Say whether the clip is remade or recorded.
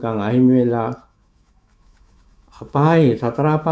remade